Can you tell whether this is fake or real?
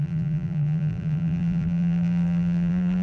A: fake